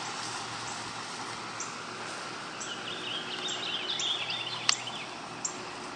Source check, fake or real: real